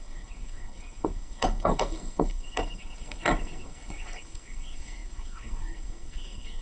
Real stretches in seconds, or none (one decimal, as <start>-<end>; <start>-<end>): none